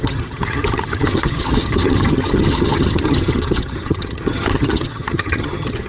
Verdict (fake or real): fake